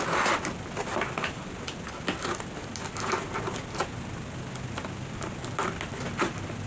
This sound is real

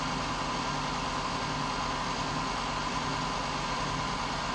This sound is real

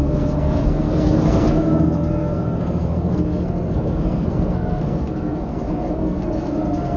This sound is fake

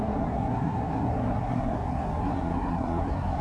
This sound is fake